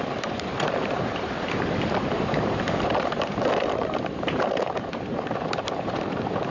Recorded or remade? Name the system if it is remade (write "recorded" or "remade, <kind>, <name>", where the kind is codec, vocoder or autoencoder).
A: remade, vocoder, BigVGAN v2